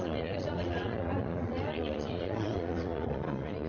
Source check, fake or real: fake